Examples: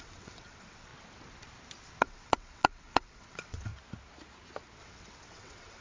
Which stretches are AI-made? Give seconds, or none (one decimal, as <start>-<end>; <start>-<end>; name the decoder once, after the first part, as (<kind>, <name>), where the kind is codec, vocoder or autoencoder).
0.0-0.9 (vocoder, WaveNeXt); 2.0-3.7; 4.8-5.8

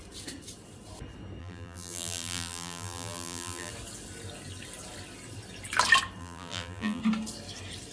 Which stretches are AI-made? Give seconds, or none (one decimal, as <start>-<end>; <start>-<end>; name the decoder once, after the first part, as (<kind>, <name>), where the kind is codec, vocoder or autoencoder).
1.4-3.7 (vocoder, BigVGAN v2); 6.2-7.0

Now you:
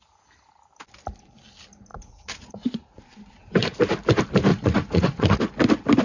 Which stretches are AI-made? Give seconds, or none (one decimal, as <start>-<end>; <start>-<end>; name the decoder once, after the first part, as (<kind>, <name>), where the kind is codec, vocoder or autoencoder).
1.9-3.0 (vocoder, Vocos); 4.5-5.4